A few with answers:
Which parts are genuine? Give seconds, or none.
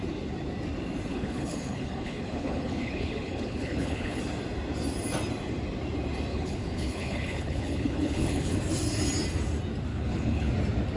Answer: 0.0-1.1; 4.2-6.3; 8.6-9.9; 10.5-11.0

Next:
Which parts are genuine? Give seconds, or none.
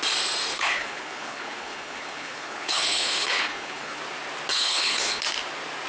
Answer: 0.0-0.5; 4.0-4.5; 5.2-5.9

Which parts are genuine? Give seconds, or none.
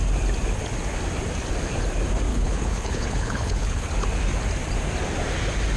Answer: 0.0-2.3; 3.9-5.8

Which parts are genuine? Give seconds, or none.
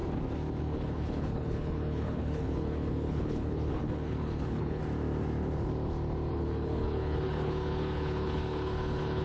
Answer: 0.0-0.6; 4.8-6.3